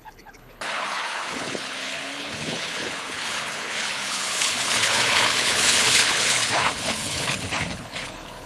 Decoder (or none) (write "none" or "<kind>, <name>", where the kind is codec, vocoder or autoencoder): codec, HILCodec